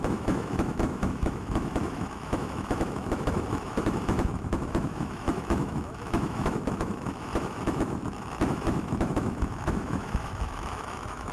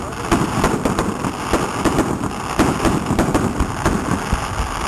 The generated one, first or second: first